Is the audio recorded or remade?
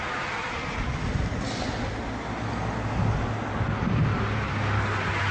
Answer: recorded